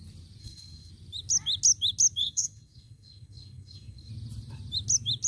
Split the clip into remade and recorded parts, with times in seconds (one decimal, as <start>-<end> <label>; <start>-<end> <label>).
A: 0.0-0.4 recorded; 0.4-0.9 remade; 0.9-2.2 recorded; 2.2-4.1 remade; 4.1-5.3 recorded